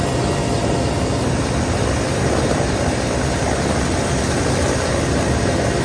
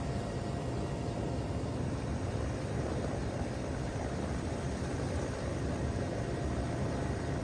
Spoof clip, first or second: second